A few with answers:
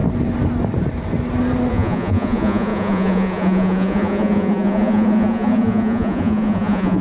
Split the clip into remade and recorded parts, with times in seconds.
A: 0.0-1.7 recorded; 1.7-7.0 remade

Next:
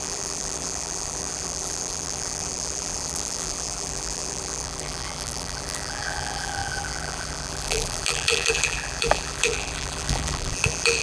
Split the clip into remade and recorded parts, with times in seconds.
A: 0.0-11.0 remade

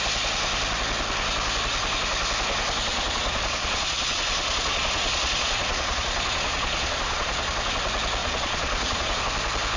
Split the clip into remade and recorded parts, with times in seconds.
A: 0.0-2.9 recorded; 2.9-7.5 remade; 7.5-8.2 recorded; 8.2-9.2 remade; 9.2-9.8 recorded

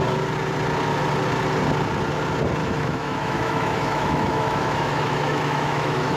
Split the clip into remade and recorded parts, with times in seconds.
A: 0.0-2.6 recorded; 2.6-6.2 remade

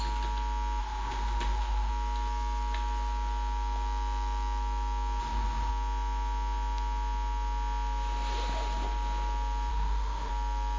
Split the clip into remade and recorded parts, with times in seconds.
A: 0.0-0.8 recorded; 0.8-1.9 remade; 1.9-5.2 recorded; 5.2-5.7 remade; 5.7-9.7 recorded; 9.7-10.3 remade; 10.3-10.8 recorded